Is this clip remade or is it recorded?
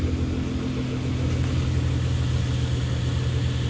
recorded